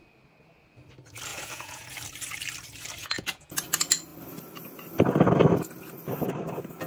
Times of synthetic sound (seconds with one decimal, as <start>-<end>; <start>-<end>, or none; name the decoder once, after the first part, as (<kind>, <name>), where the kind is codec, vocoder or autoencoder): 1.3-1.9 (vocoder, Vocos); 3.0-3.6